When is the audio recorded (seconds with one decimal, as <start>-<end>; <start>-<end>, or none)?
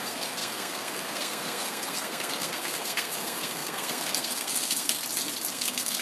5.0-5.5